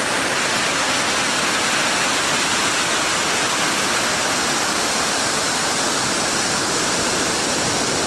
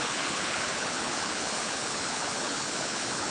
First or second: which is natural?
first